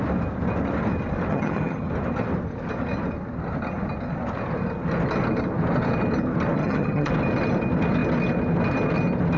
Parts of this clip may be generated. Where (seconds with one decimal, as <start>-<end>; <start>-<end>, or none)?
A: 1.3-1.9; 6.6-7.1